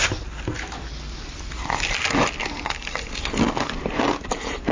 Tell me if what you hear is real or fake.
real